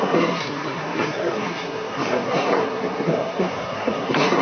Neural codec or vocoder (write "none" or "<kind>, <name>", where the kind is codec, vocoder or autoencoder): codec, SNAC